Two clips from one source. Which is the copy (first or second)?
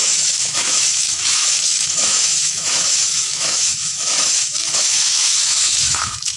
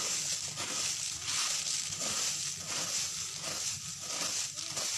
first